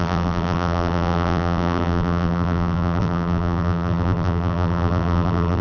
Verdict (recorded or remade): remade